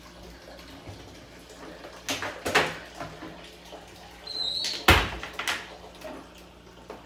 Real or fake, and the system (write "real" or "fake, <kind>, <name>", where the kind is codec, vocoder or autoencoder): real